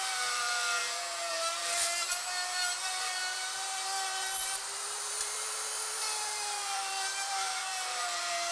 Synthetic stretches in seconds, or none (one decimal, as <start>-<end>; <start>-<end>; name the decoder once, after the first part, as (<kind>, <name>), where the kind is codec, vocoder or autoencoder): 0.0-8.5 (vocoder, BigVGAN v2)